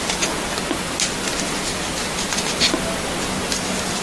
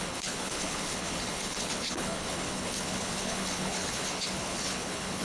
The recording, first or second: first